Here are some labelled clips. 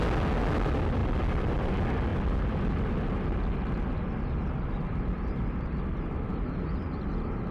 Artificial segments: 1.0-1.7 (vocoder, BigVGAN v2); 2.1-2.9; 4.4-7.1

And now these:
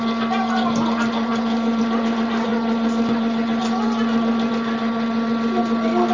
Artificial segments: none

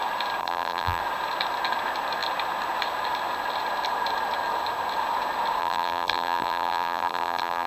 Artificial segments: 0.4-1.0 (vocoder, BigVGAN v2); 5.6-7.7